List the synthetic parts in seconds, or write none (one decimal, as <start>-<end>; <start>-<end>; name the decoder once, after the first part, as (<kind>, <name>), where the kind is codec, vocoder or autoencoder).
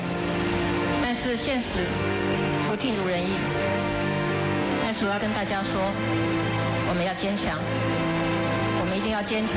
1.6-2.9 (codec, SNAC); 3.7-5.2